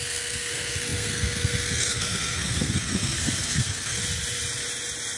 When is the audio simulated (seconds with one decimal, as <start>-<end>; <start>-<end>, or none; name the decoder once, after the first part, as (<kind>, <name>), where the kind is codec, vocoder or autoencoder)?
0.0-4.0 (codec, SNAC)